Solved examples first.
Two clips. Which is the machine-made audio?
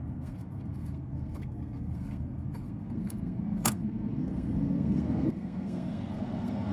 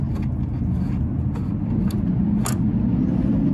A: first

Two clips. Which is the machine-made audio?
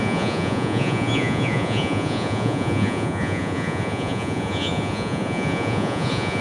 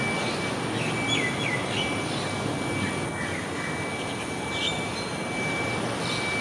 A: first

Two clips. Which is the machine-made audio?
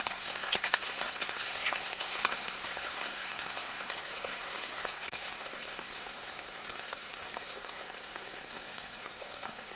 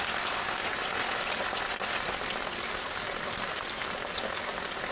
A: first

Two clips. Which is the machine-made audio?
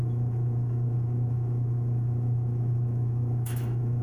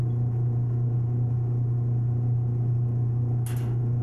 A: first